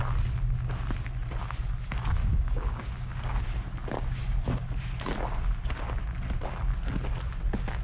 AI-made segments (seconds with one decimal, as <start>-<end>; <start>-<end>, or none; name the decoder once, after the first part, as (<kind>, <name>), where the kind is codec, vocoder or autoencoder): 2.2-3.4 (codec, DAC)